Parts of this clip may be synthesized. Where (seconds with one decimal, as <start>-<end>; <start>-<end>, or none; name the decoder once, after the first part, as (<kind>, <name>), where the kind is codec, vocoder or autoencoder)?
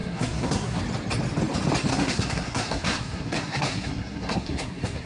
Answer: 0.0-0.8 (codec, SNAC); 1.9-5.1